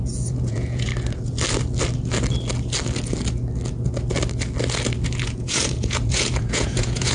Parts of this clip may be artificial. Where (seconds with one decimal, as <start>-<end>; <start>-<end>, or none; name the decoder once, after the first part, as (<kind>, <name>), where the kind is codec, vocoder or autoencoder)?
0.0-0.9 (vocoder, Vocos); 5.2-7.1